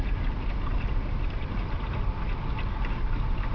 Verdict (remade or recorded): recorded